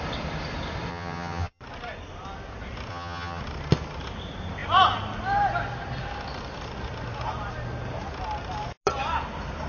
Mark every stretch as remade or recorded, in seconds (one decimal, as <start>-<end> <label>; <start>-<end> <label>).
0.0-0.9 recorded; 0.9-1.6 remade; 1.6-2.9 recorded; 2.9-3.4 remade; 3.4-9.7 recorded